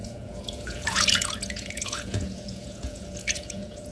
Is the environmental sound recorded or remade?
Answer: remade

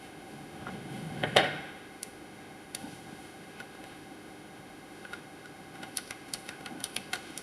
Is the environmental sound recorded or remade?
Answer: remade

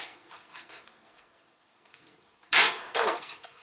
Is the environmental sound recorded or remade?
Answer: remade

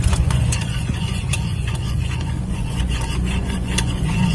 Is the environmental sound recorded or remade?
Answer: remade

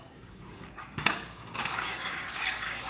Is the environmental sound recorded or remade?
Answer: remade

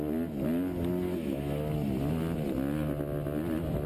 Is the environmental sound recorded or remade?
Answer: recorded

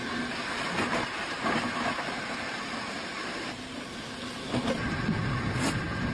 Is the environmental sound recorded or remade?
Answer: recorded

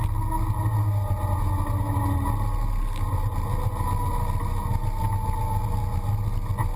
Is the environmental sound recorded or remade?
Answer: recorded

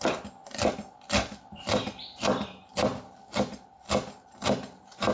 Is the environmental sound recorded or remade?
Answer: recorded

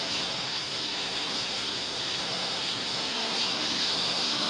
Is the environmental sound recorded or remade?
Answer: remade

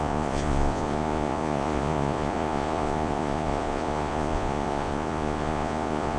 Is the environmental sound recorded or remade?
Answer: remade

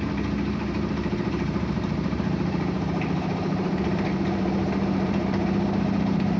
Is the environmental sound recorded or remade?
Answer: remade